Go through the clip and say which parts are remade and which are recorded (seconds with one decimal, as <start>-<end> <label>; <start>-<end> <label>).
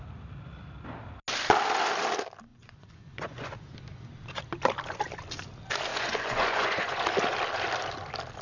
0.0-2.5 recorded; 2.5-3.5 remade; 3.5-5.9 recorded; 5.9-7.0 remade; 7.0-8.4 recorded